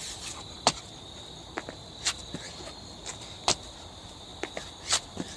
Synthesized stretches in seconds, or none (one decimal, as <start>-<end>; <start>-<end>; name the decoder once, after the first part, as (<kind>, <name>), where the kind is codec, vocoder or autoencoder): none